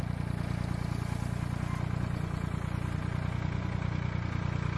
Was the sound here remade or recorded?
recorded